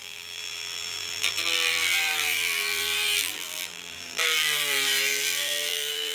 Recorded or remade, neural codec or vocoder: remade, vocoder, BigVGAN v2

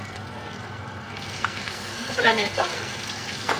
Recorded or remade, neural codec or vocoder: remade, codec, SNAC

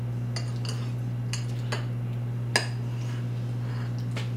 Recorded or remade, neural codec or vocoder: recorded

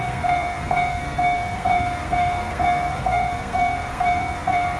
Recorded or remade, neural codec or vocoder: remade, codec, SNAC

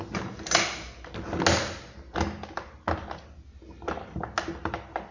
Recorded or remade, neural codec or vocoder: recorded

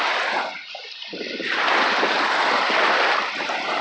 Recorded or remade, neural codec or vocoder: recorded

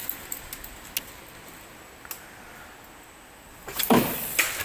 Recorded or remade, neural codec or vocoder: recorded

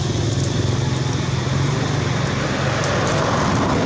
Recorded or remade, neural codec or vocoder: recorded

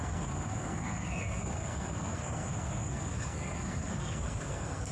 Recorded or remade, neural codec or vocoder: remade, codec, SNAC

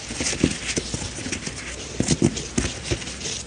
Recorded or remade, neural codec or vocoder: recorded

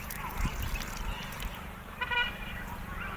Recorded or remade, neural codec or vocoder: remade, vocoder, BigVGAN v2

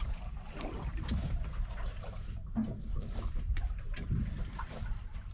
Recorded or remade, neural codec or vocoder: remade, vocoder, BigVGAN v2